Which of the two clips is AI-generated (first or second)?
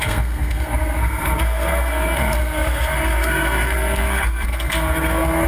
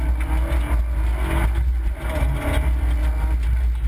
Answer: first